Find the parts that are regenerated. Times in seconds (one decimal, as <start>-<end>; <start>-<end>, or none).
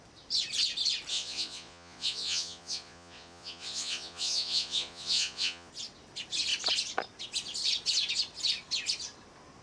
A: 1.1-5.7